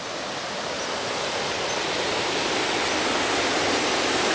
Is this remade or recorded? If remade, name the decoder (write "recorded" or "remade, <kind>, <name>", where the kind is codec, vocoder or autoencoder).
recorded